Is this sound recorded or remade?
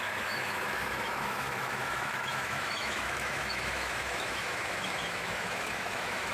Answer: remade